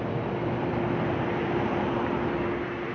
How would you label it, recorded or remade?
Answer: recorded